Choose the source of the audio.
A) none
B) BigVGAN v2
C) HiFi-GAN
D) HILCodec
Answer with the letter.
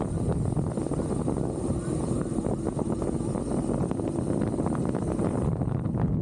A